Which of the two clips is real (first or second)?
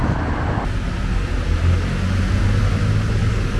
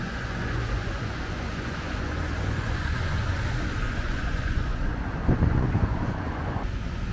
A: first